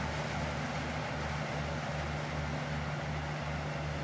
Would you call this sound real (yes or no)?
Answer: yes